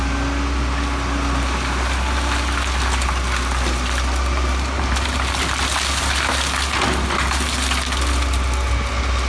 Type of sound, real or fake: real